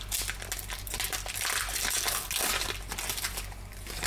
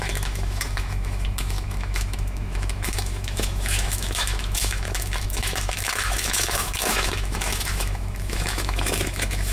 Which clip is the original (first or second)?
first